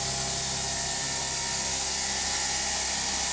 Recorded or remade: recorded